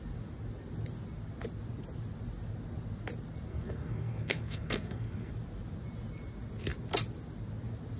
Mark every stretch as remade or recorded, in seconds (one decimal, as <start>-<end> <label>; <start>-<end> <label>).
0.0-3.5 recorded; 3.5-5.3 remade; 5.3-8.0 recorded